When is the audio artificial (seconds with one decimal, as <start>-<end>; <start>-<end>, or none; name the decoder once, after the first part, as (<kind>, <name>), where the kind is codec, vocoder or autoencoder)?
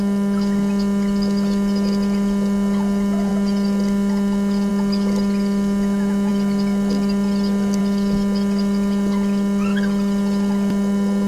none